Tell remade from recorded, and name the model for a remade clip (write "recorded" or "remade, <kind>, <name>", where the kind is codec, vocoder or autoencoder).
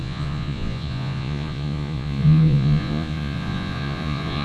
remade, vocoder, Vocos